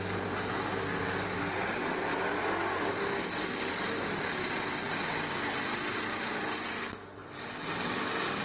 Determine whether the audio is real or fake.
real